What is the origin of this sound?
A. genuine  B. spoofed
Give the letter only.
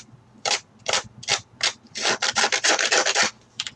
B